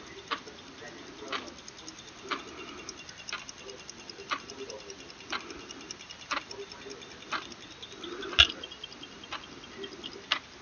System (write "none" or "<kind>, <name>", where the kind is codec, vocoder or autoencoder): none